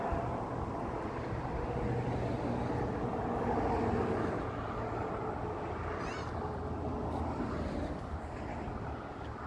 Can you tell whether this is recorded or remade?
recorded